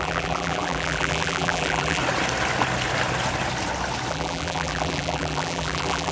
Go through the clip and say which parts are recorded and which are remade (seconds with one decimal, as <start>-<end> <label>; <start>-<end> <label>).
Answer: 0.0-2.0 remade; 2.0-4.1 recorded; 4.1-6.1 remade

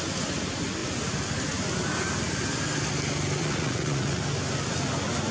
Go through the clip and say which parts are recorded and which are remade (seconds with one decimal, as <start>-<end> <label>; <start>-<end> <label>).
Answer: 0.0-3.4 recorded; 3.4-4.2 remade; 4.2-5.3 recorded

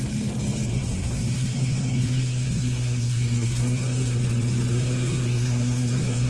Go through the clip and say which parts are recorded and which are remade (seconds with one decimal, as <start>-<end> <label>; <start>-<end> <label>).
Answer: 0.0-0.7 recorded; 0.7-4.2 remade; 4.2-4.7 recorded; 4.7-6.3 remade